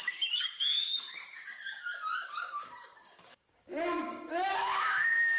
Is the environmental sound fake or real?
fake